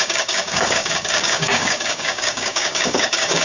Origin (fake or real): fake